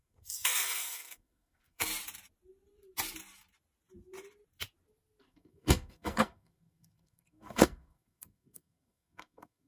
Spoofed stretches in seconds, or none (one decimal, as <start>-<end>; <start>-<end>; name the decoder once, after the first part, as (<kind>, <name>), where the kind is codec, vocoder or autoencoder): 0.0-1.9 (codec, SNAC); 5.2-9.7